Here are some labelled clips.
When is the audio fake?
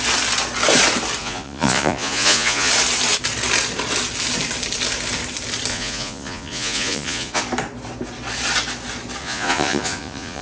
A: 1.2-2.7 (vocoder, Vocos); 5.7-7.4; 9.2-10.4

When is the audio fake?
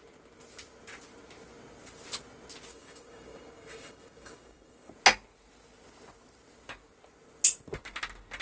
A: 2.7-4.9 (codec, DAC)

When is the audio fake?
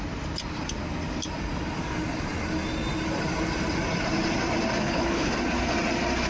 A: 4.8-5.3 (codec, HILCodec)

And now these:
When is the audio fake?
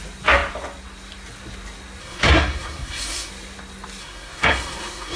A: 2.0-3.3 (codec, SNAC); 4.0-5.2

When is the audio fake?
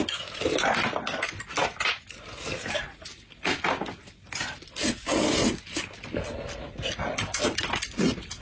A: none